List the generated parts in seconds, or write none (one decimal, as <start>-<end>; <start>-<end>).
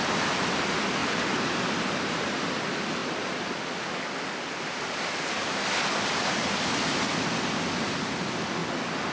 none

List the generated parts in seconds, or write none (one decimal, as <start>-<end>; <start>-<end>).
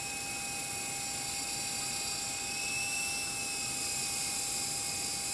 none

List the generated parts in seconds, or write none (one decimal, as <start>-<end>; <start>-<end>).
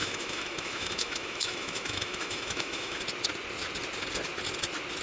0.0-3.0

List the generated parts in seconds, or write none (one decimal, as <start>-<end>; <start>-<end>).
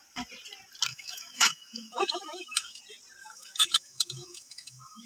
0.9-2.8; 3.2-5.1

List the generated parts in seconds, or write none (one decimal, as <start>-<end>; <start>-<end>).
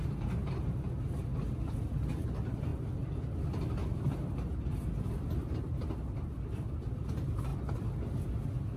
2.7-3.6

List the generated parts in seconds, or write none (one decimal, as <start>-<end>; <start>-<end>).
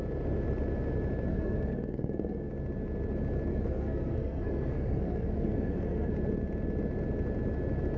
1.3-2.5; 3.5-6.1